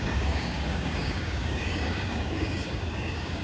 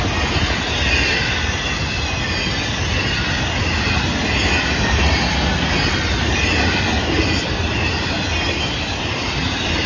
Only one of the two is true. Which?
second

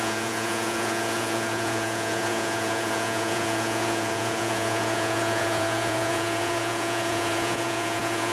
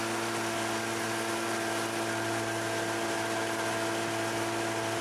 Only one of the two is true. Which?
second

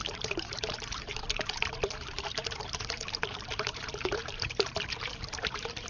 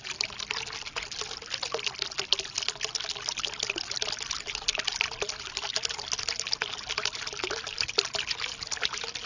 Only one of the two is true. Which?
second